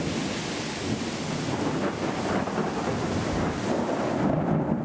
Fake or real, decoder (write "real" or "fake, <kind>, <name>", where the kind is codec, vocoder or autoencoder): real